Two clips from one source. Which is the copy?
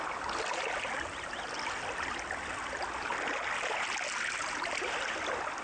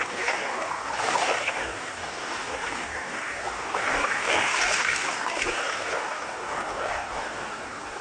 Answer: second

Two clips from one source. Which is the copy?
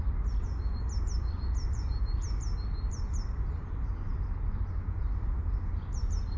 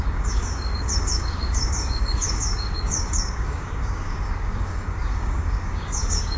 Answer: second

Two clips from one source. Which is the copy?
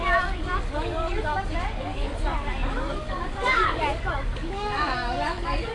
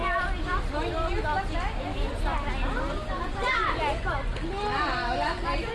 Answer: first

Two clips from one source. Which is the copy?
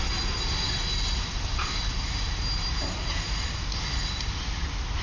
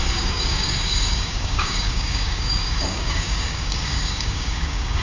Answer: second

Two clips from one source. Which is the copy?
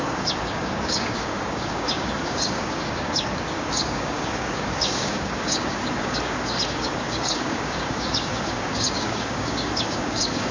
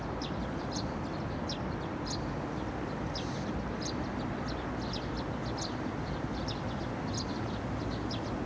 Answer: first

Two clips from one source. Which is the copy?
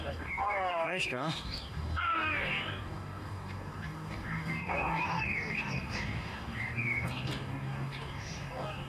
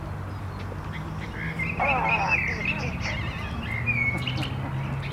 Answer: first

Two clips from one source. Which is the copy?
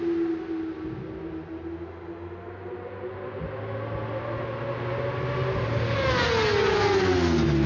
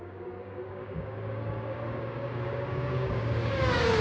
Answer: second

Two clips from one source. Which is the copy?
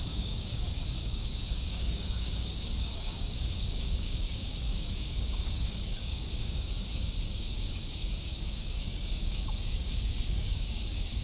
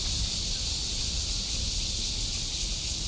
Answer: first